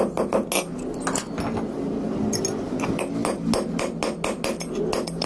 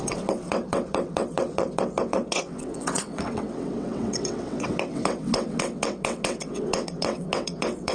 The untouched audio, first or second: first